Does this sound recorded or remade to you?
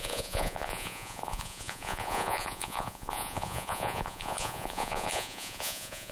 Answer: remade